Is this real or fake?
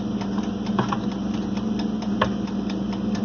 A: real